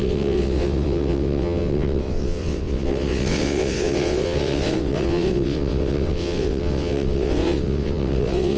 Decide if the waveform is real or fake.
fake